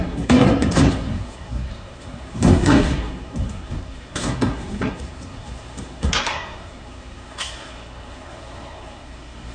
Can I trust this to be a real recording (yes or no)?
no